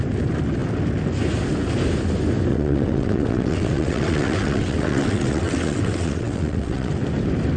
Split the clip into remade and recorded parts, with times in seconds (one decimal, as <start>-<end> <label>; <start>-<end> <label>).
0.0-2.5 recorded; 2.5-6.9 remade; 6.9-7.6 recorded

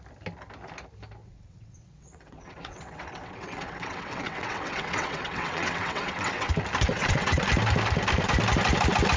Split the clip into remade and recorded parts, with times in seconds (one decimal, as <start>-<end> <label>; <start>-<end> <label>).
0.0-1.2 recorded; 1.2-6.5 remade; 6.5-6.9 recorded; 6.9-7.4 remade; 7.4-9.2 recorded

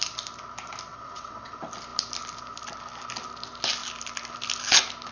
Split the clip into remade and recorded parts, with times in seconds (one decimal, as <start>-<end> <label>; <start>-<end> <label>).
0.0-0.9 recorded; 0.9-1.5 remade; 1.5-5.1 recorded

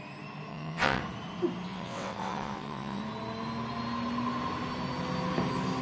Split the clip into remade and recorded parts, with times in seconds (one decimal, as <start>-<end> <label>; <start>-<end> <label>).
0.0-0.5 recorded; 0.5-1.0 remade; 1.0-1.7 recorded; 1.7-3.0 remade; 3.0-5.8 recorded

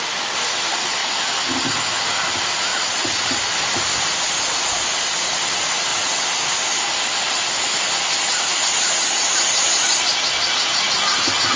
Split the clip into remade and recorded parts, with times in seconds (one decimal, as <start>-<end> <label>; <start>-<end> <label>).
0.0-2.7 recorded; 2.7-3.4 remade; 3.4-11.6 recorded

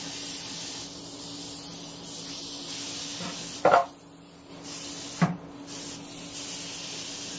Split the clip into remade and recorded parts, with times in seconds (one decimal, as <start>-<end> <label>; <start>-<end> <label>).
0.0-7.4 recorded

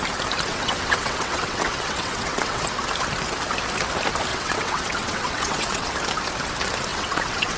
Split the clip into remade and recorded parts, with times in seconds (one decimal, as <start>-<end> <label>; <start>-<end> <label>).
0.0-0.5 recorded; 0.5-2.6 remade; 2.6-4.3 recorded; 4.3-5.9 remade; 5.9-6.9 recorded; 6.9-7.6 remade

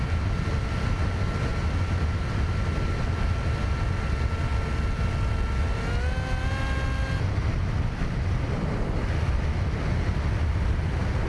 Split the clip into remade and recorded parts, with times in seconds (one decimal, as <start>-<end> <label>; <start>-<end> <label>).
0.0-11.3 recorded